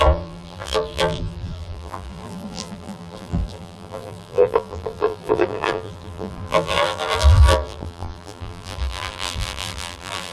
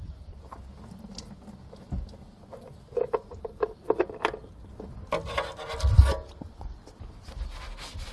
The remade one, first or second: first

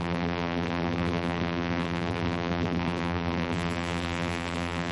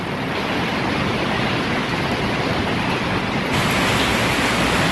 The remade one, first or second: first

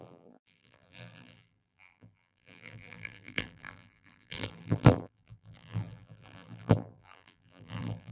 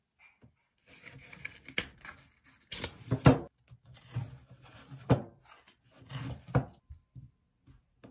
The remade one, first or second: first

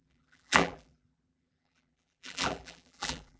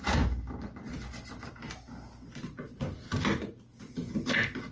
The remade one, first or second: first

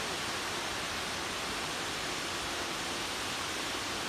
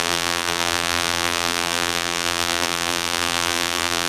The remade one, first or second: second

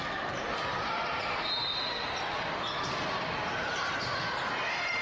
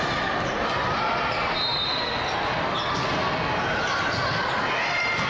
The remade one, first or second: first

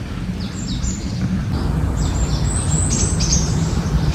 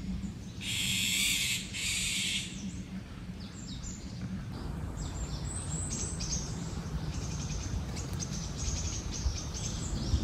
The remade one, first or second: second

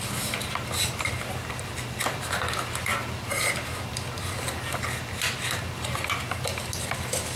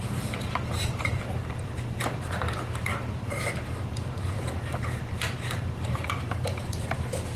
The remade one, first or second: second